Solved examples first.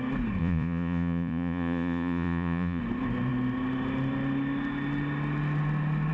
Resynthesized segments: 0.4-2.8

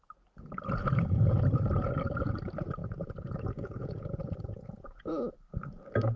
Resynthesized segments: 0.8-1.4; 2.8-5.2

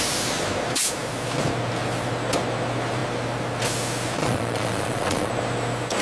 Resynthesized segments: 4.2-5.3

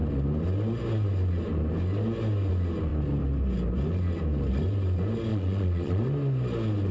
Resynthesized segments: 5.3-6.0

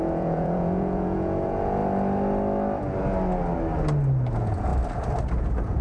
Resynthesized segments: 0.0-1.8; 4.3-4.7; 5.3-5.8